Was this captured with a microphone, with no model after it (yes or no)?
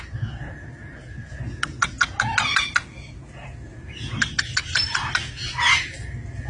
yes